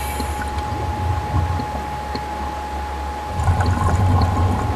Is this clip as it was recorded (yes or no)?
yes